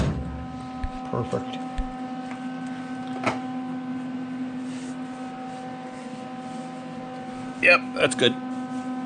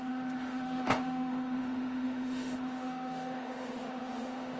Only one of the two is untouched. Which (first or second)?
first